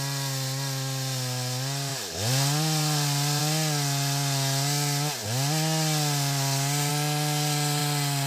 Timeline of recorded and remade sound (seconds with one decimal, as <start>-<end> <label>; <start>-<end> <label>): 0.0-1.9 recorded; 1.9-3.4 remade; 3.4-8.3 recorded